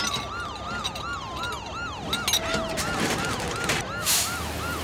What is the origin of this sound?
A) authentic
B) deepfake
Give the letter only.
A